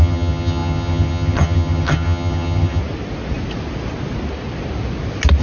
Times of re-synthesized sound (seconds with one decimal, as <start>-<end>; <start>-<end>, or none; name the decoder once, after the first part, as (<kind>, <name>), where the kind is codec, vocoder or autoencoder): 0.0-2.8 (vocoder, HiFi-GAN)